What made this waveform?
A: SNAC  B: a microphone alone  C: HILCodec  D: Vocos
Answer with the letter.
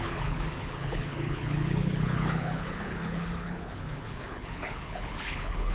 C